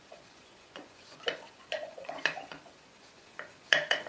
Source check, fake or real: fake